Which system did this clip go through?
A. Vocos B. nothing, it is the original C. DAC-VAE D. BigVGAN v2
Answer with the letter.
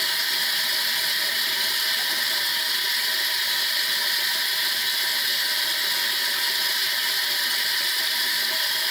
B